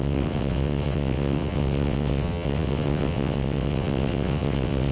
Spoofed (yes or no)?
yes